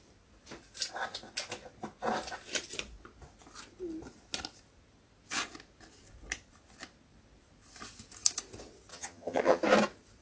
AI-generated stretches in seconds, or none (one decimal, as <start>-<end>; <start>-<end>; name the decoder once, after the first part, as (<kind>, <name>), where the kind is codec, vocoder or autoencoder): 8.9-9.6 (vocoder, HiFi-GAN)